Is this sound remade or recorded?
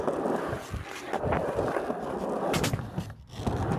recorded